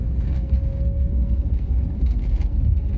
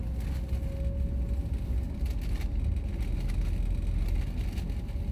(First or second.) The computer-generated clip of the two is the first